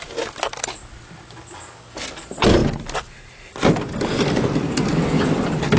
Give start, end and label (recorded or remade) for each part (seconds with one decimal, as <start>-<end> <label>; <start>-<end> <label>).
0.0-5.8 recorded